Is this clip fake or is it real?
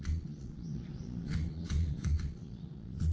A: fake